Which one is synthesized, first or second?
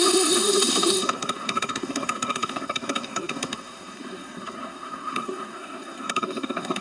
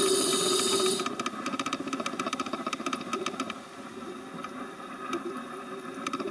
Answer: first